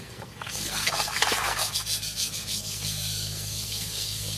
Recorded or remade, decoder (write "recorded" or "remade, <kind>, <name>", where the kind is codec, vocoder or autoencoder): remade, codec, SNAC